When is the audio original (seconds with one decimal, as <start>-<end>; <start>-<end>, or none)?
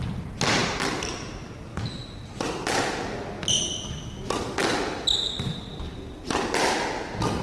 0.0-7.4